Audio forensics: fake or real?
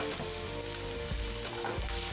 real